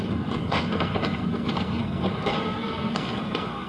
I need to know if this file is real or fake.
fake